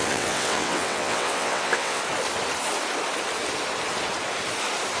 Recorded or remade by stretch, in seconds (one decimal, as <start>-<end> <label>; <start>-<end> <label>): 0.0-2.0 remade; 2.0-5.0 recorded